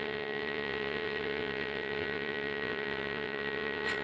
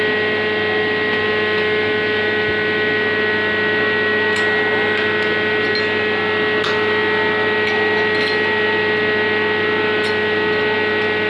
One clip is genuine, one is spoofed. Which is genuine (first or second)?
second